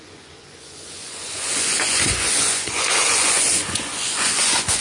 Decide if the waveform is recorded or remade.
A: remade